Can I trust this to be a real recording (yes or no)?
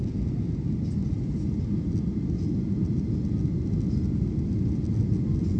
yes